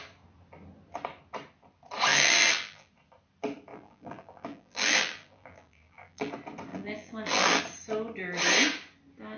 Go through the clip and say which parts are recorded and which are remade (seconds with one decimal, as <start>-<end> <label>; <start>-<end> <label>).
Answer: 0.0-2.1 recorded; 2.1-2.9 remade; 2.9-3.7 recorded; 3.7-6.3 remade; 6.3-6.7 recorded; 6.7-7.6 remade; 7.6-9.4 recorded